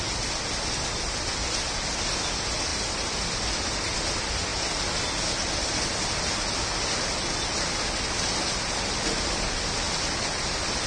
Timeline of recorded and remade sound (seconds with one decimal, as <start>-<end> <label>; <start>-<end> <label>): 0.0-10.9 recorded